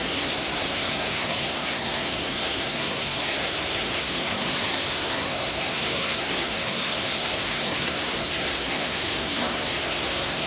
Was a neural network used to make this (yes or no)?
yes